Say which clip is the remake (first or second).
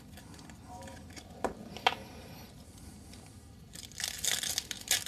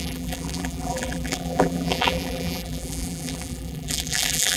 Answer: second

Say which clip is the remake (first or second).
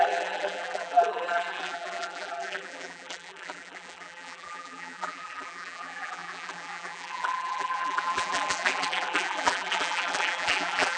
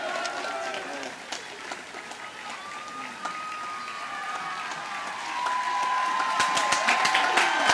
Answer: first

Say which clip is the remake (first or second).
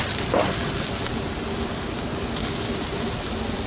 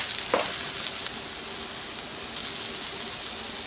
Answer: first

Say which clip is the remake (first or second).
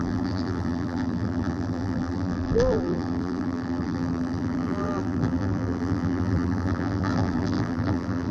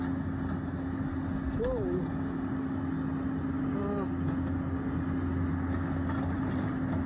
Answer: first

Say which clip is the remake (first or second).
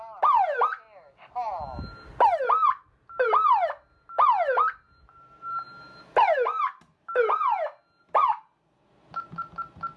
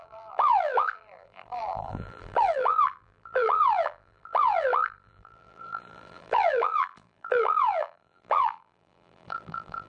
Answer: second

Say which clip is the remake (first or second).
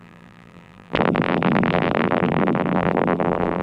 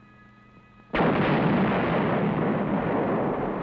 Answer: first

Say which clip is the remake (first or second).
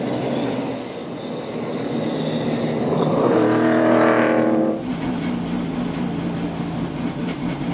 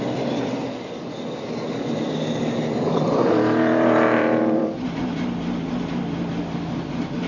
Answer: second